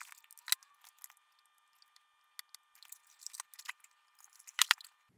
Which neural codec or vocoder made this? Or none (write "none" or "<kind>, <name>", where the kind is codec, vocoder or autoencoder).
none